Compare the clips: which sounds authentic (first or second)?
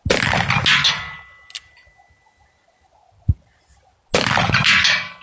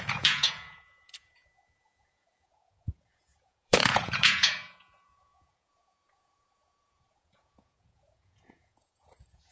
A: first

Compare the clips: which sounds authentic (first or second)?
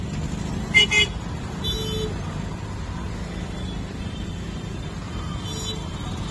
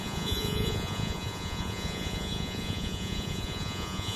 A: first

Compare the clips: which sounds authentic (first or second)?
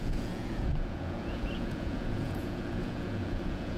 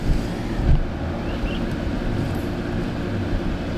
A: second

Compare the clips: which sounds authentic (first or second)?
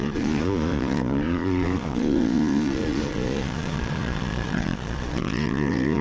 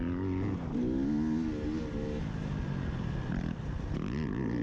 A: second